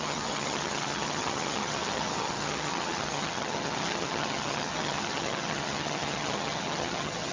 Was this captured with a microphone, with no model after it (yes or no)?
no